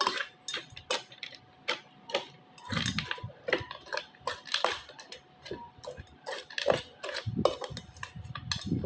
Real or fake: real